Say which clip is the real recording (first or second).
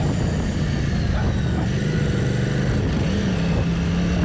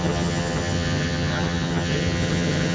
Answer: first